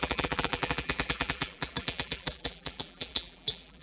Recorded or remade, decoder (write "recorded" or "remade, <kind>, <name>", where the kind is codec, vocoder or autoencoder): remade, vocoder, BigVGAN v2